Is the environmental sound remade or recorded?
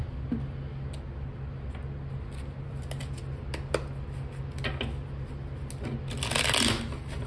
recorded